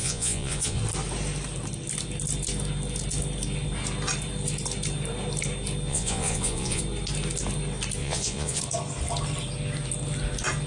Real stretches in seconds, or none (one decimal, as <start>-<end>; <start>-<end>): 0.8-5.9; 6.8-8.0; 8.6-10.7

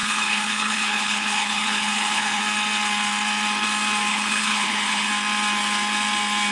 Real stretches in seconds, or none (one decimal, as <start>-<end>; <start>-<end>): 2.4-4.1; 5.1-6.5

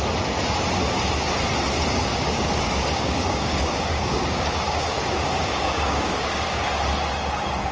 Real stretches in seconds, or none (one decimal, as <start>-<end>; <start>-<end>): 0.0-2.1; 6.7-7.7

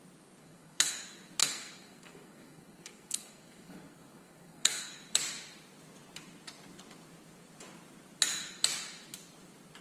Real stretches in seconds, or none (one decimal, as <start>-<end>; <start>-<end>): 0.0-0.4; 0.9-1.4; 4.9-9.8

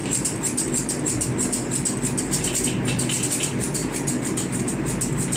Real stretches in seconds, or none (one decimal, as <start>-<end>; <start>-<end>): 0.0-5.4